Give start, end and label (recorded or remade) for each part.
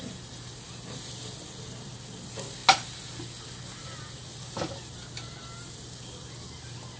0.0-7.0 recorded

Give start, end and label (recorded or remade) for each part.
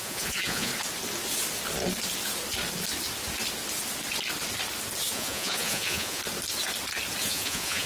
0.0-0.7 remade; 0.7-5.1 recorded; 5.1-6.2 remade; 6.2-7.2 recorded; 7.2-7.9 remade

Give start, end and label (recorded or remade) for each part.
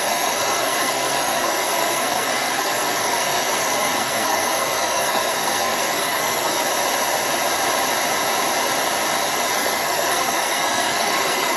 0.0-6.6 remade; 6.6-9.5 recorded; 9.5-11.6 remade